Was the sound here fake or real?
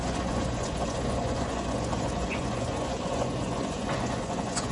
fake